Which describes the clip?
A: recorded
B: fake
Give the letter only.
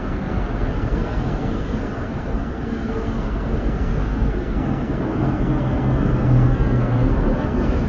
B